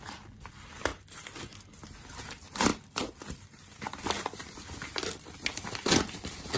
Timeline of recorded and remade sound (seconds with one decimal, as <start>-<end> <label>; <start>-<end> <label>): 0.0-6.6 recorded

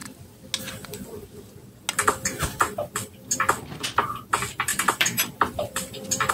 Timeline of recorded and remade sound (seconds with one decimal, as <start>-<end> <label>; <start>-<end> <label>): 0.0-4.7 recorded; 4.7-6.3 remade

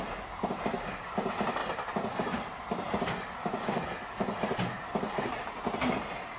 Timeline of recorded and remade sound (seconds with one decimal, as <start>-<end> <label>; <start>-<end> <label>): 0.0-6.4 recorded

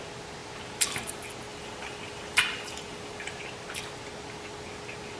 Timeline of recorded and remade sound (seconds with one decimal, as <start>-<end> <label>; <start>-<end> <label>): 0.0-1.5 recorded; 1.5-3.4 remade; 3.4-5.2 recorded

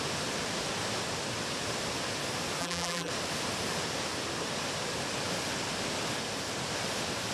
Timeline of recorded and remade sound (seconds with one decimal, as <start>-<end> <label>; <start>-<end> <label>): 0.0-2.6 recorded; 2.6-3.1 remade; 3.1-7.3 recorded